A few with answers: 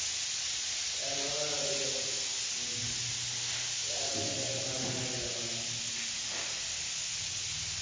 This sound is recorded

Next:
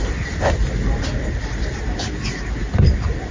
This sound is recorded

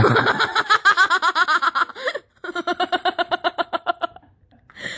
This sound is recorded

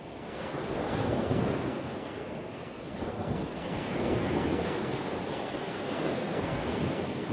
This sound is remade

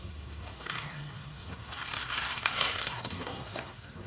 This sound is remade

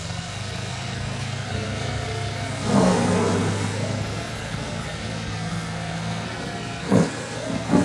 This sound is remade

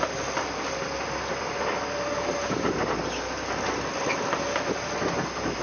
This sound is recorded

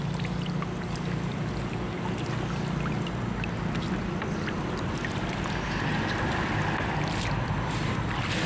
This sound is recorded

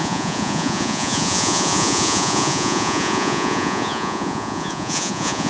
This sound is remade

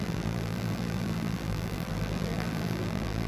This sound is remade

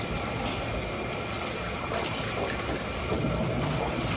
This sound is recorded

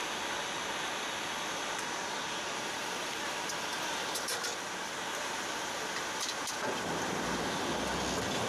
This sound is recorded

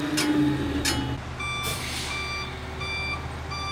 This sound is recorded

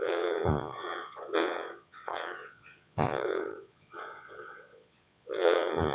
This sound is remade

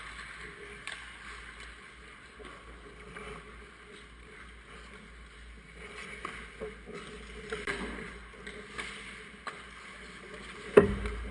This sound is recorded